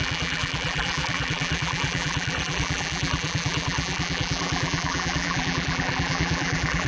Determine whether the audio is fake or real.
fake